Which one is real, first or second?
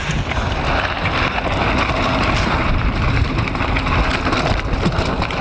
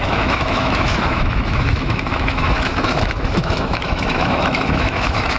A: first